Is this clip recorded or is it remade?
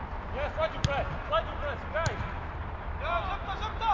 recorded